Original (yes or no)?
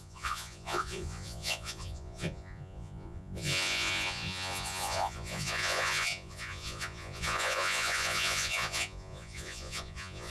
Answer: no